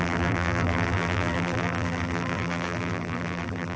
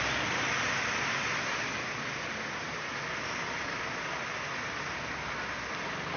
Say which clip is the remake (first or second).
first